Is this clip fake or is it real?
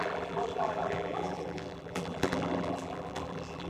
fake